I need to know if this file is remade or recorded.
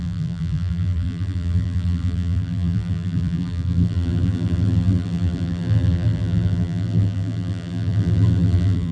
remade